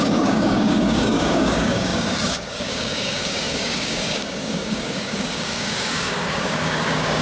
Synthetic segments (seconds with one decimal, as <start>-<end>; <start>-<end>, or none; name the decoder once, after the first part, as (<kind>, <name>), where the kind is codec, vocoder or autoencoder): 0.0-7.2 (codec, DAC)